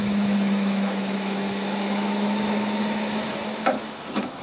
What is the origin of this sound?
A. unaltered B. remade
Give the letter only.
B